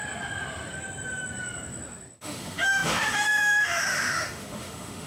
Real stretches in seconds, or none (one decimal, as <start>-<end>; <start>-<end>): 0.0-2.2